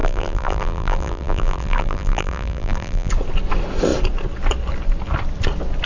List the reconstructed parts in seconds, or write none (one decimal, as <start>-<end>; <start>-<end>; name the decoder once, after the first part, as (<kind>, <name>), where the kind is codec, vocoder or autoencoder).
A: 0.0-3.1 (vocoder, BigVGAN v2)